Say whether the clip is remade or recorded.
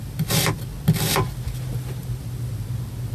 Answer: recorded